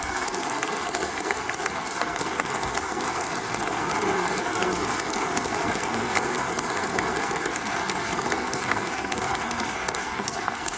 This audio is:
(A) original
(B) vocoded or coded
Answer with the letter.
B